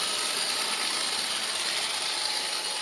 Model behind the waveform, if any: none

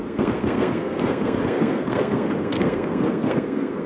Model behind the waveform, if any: codec, SNAC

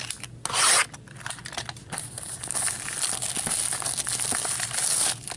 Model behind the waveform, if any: none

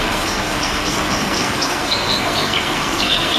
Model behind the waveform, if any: codec, SNAC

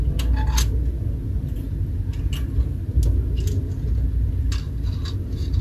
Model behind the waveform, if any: none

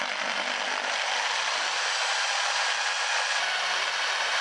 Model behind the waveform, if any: none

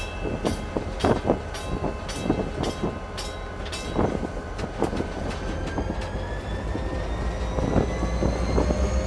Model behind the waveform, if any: none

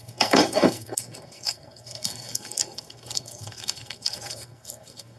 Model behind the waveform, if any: codec, SNAC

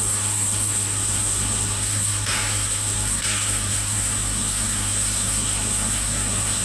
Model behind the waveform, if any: codec, SNAC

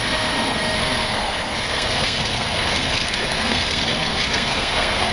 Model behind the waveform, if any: codec, SNAC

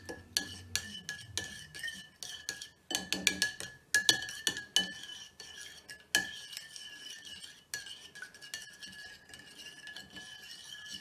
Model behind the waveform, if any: none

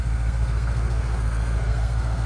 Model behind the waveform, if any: codec, SNAC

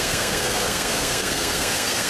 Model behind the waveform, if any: codec, SNAC